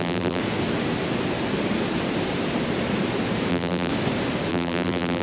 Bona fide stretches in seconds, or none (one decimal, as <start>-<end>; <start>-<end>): 0.4-3.5; 3.9-4.5